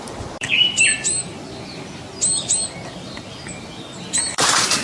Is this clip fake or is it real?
real